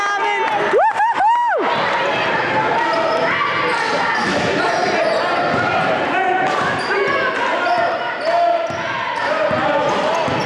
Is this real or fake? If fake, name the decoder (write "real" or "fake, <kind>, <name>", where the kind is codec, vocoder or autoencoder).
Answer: real